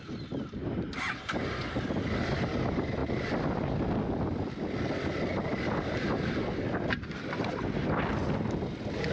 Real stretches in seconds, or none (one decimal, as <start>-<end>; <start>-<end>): 0.0-9.1